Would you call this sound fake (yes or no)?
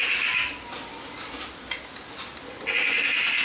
no